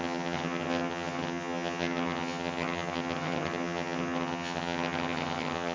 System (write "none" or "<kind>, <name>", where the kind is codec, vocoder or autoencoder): vocoder, HiFi-GAN